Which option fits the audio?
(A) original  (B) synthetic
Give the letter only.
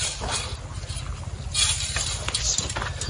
A